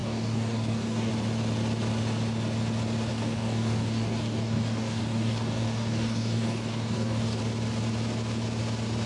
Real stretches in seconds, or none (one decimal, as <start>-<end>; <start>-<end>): 1.1-3.1; 7.4-9.1